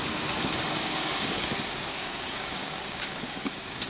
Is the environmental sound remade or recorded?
remade